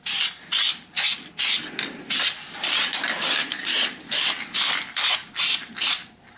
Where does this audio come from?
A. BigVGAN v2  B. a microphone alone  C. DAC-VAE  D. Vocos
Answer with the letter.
B